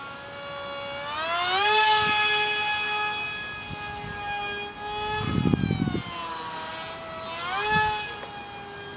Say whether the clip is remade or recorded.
recorded